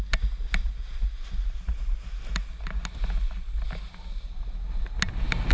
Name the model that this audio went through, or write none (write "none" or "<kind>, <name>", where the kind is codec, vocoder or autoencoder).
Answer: none